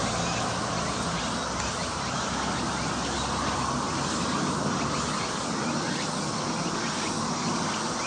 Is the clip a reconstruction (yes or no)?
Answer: no